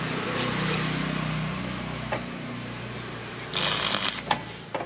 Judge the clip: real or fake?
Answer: real